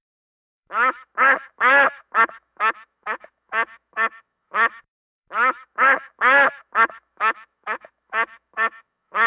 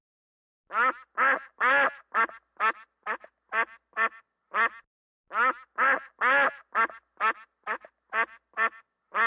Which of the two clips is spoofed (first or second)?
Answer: first